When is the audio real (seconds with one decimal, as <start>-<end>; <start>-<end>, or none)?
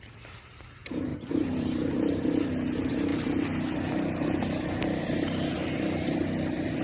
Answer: 0.0-1.1; 1.9-6.8